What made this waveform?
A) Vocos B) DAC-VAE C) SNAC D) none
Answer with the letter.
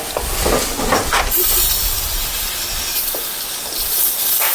D